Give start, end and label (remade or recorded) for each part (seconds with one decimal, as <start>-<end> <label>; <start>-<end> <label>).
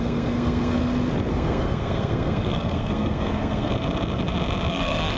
0.0-0.8 remade; 0.8-1.3 recorded; 1.3-3.7 remade; 3.7-4.7 recorded; 4.7-5.2 remade